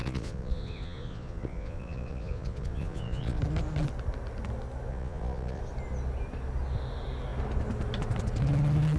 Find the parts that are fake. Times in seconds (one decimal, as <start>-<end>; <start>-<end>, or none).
0.0-3.4; 4.9-5.6